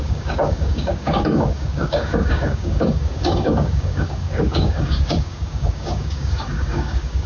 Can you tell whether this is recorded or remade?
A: remade